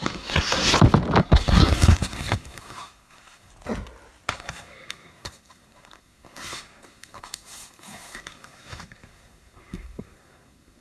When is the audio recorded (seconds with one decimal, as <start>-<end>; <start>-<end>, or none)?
0.7-1.2; 3.5-4.3